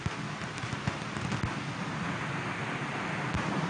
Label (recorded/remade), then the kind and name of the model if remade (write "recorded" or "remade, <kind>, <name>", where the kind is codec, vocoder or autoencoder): recorded